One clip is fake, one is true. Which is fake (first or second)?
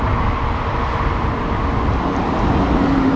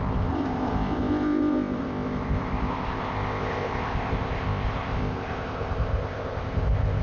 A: second